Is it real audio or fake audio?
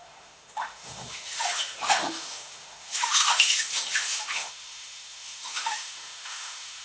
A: fake